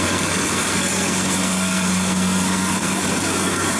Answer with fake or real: fake